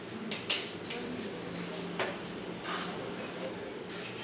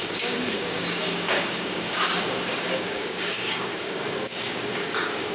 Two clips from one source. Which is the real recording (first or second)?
first